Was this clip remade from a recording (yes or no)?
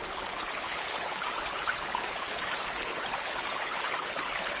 yes